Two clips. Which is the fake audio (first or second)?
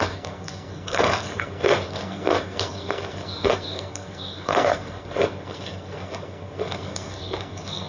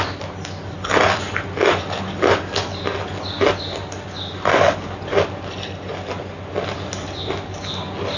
first